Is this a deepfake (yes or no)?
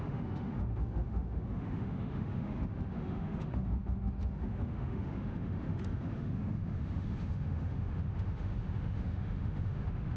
yes